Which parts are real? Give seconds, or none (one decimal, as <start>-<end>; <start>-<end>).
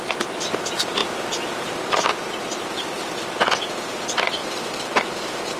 0.0-4.4; 5.1-5.6